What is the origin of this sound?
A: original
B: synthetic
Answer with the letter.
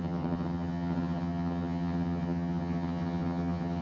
B